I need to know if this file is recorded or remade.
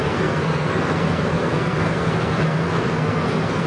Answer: remade